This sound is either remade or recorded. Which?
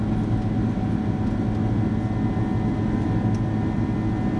recorded